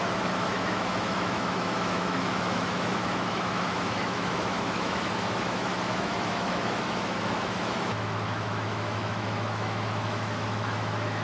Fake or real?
fake